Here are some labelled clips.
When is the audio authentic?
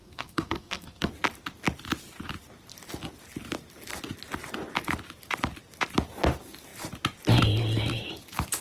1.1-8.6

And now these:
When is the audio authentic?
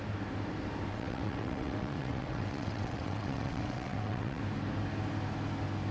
0.0-0.9; 4.4-5.9